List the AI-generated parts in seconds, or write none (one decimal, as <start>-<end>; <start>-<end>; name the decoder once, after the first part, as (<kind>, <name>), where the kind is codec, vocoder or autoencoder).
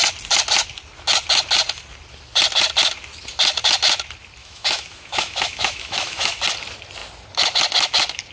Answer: 4.4-6.4 (autoencoder, DAC-VAE)